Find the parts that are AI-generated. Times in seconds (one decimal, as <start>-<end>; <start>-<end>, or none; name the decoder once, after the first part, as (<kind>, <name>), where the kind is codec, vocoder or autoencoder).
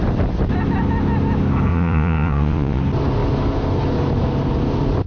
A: 1.7-2.8 (vocoder, Vocos)